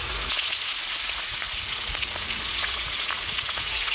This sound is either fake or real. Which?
fake